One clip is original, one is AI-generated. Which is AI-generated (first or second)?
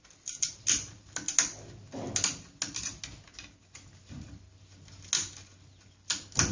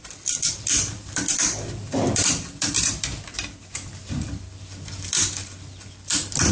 second